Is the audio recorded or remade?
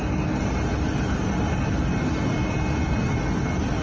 recorded